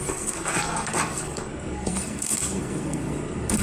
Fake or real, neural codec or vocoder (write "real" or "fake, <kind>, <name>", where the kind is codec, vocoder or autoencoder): fake, codec, SNAC